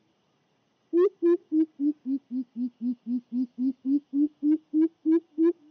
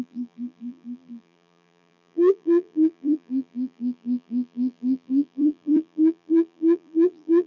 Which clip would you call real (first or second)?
first